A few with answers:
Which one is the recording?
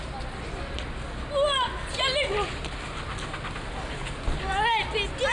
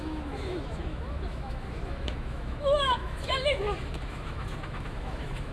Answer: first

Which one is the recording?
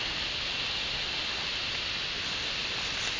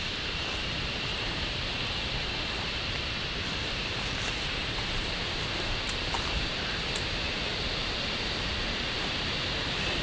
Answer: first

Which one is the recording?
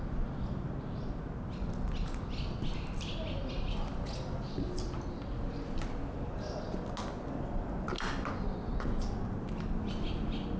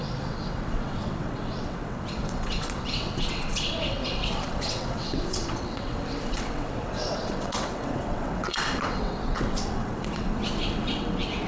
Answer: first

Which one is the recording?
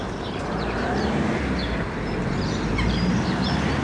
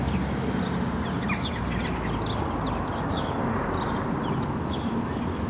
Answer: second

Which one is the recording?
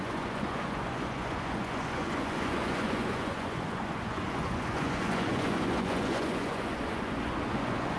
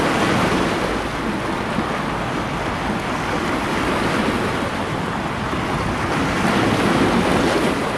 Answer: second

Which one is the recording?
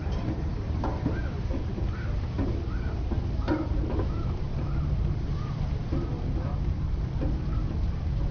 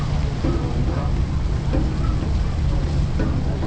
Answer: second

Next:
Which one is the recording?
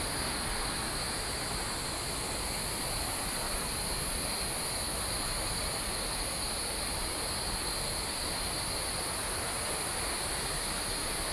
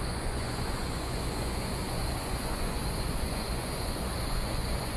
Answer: first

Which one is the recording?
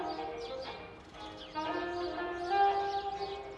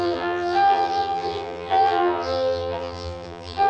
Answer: first